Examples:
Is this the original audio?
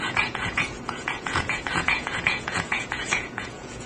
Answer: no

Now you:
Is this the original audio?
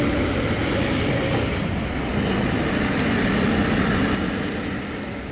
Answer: yes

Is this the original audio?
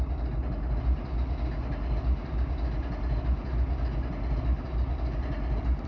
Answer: yes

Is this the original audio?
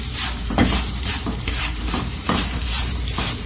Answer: no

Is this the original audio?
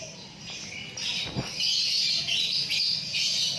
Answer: yes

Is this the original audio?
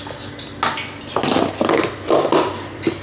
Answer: yes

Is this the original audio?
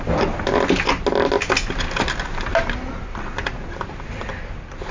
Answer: yes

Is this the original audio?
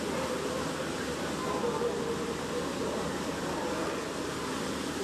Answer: yes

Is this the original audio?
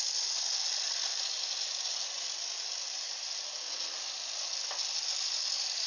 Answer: yes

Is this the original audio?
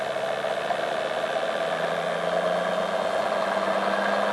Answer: yes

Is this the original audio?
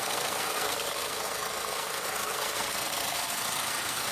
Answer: no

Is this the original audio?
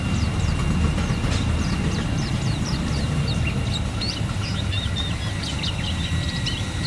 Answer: no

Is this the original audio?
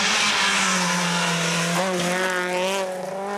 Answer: yes